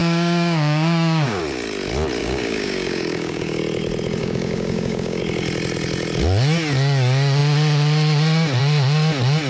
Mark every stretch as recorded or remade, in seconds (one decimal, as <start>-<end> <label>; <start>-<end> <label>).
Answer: 0.0-1.4 remade; 1.4-2.2 recorded; 2.2-3.6 remade; 3.6-4.2 recorded; 4.2-5.2 remade; 5.2-9.5 recorded